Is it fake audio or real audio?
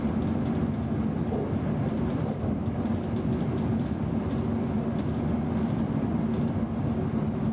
real